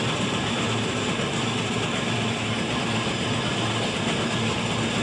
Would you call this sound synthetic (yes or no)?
no